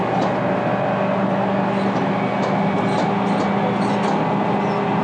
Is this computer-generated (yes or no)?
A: no